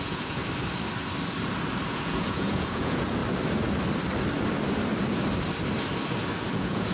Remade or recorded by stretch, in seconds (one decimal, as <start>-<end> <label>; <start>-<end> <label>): 0.0-0.4 remade; 0.4-1.9 recorded; 1.9-3.2 remade; 3.2-6.5 recorded; 6.5-6.9 remade